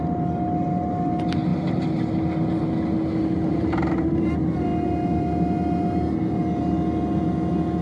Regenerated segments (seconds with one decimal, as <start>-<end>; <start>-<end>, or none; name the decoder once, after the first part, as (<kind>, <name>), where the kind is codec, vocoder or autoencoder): none